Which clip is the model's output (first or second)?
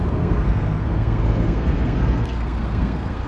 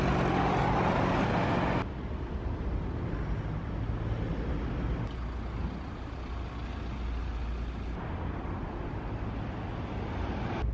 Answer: first